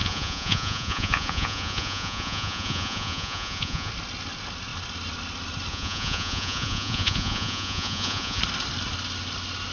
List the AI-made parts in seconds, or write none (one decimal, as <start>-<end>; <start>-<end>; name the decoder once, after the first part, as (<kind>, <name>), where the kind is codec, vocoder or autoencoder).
0.0-3.9 (vocoder, Vocos); 5.7-8.4